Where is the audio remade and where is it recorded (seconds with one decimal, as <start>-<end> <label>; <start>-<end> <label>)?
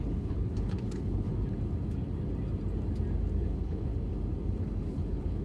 0.0-1.3 remade; 1.3-3.4 recorded; 3.4-3.9 remade; 3.9-4.6 recorded; 4.6-5.4 remade